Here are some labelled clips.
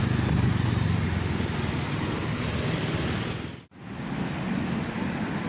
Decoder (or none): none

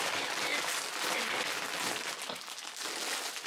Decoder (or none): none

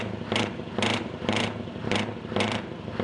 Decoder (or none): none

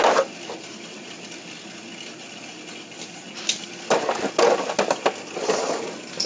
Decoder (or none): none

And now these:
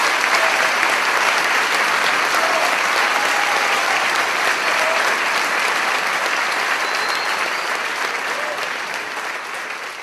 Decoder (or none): none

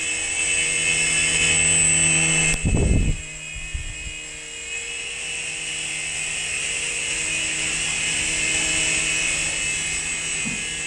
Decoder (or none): none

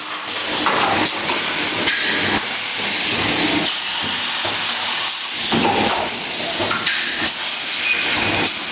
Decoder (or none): none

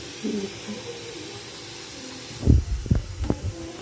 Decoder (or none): none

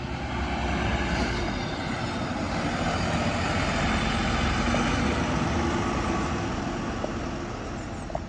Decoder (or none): none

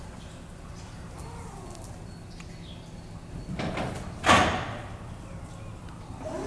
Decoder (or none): none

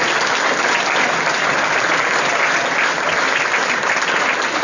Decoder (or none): none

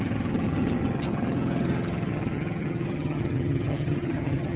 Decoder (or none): vocoder, HiFi-GAN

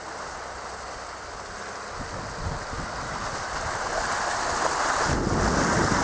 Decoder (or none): none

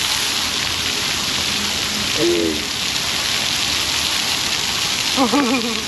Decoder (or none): none